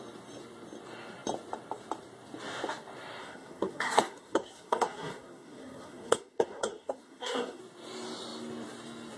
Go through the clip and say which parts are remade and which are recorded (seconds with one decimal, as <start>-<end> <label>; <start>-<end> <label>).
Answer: 0.0-3.2 recorded; 3.2-7.6 remade; 7.6-9.2 recorded